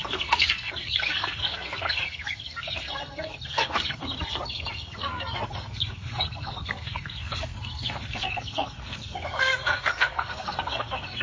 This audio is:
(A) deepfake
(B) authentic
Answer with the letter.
A